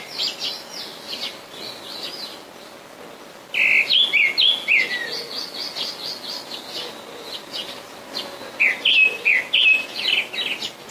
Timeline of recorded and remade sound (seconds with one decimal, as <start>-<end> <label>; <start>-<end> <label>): 0.0-10.9 recorded